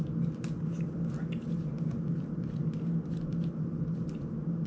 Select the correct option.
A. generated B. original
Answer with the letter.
B